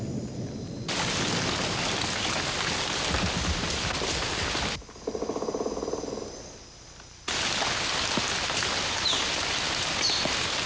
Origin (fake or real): real